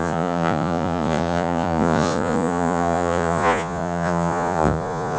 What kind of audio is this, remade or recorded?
remade